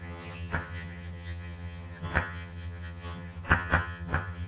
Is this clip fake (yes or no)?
yes